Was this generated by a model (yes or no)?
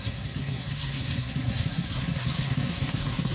yes